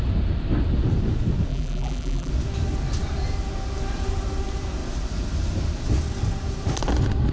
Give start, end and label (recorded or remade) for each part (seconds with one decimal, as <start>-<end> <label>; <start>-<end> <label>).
0.0-1.5 recorded; 1.5-2.3 remade; 2.3-7.3 recorded